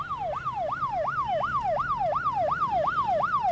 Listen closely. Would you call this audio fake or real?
real